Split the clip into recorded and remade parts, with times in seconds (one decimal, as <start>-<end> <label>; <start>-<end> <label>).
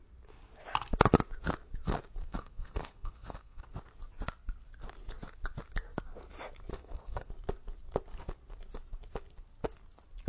0.0-2.2 recorded; 2.2-3.6 remade; 3.6-6.7 recorded; 6.7-7.3 remade; 7.3-10.3 recorded